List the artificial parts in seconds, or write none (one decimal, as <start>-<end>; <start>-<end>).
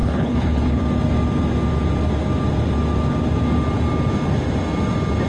0.0-0.8